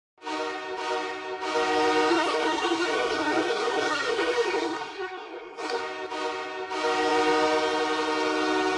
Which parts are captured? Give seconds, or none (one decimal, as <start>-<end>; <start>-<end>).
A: 0.0-2.1; 5.8-8.8

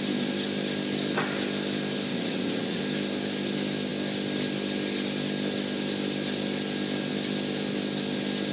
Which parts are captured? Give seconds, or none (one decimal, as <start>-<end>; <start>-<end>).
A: 0.0-2.1; 2.8-8.5

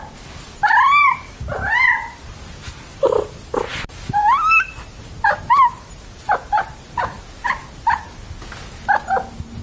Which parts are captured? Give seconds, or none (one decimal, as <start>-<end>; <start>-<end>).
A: 0.0-9.6

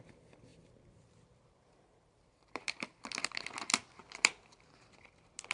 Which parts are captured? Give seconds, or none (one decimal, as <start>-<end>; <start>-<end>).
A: 0.0-0.5; 2.9-4.0; 4.9-5.5